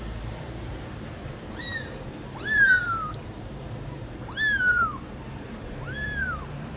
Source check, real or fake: fake